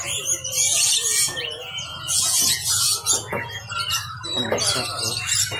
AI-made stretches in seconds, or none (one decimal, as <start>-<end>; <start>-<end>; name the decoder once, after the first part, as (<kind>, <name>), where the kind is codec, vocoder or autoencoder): 0.7-3.7 (vocoder, Vocos)